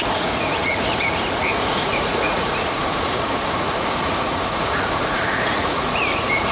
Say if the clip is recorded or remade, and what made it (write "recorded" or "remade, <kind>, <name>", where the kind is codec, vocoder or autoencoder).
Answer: remade, vocoder, Vocos